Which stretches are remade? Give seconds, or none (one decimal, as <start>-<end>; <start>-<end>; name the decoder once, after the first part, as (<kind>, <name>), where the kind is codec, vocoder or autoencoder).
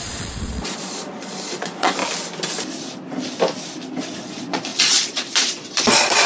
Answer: 0.0-2.0 (vocoder, Vocos); 4.2-6.3